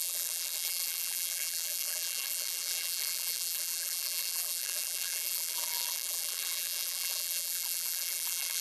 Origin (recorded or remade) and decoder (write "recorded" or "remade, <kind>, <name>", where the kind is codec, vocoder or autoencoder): remade, vocoder, BigVGAN v2